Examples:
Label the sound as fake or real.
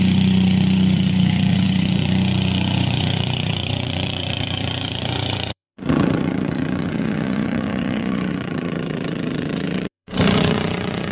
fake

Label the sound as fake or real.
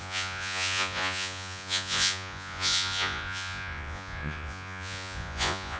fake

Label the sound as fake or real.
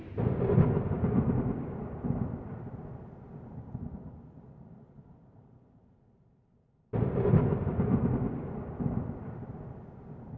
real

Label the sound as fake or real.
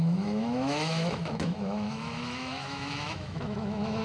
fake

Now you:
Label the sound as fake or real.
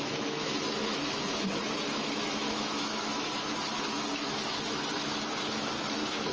fake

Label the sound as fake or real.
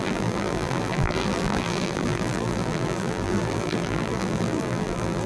fake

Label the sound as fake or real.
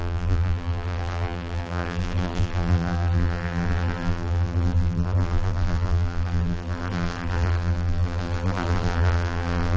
fake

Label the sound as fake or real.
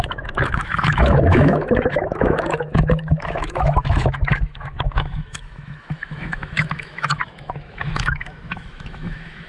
fake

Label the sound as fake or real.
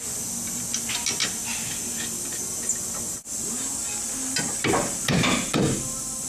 real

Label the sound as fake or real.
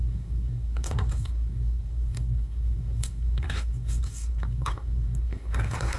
fake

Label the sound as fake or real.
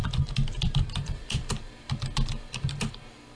fake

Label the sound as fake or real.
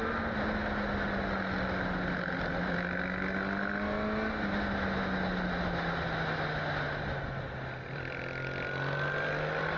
real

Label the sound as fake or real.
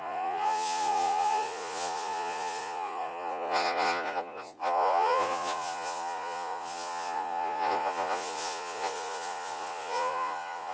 fake